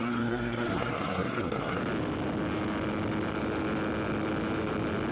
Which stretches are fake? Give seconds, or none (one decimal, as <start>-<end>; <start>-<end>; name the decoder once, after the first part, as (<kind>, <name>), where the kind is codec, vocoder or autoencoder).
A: 0.0-1.8 (codec, SNAC)